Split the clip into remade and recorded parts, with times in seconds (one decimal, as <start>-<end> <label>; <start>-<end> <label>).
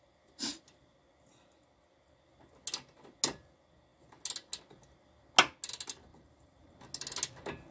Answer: 0.0-6.1 recorded; 6.1-6.7 remade; 6.7-7.7 recorded